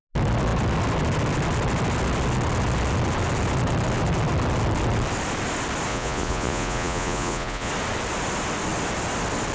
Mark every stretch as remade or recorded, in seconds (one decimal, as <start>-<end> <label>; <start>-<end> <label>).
0.0-5.9 recorded; 5.9-7.7 remade; 7.7-9.5 recorded